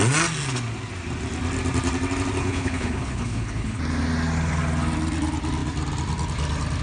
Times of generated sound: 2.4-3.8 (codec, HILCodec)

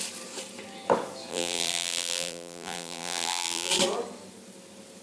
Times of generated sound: 1.3-3.7 (vocoder, BigVGAN v2)

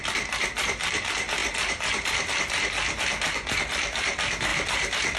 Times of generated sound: 0.0-5.2 (vocoder, BigVGAN v2)

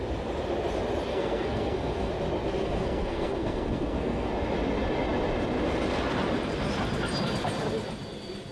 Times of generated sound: 1.1-2.1 (codec, SNAC); 2.6-4.3